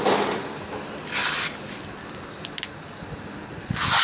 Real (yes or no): yes